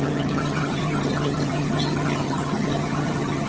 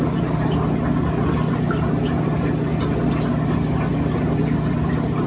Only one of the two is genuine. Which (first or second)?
second